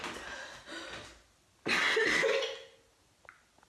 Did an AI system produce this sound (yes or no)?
no